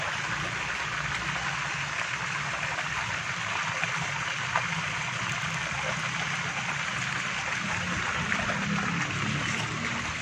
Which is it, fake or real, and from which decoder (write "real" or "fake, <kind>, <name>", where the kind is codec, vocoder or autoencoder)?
real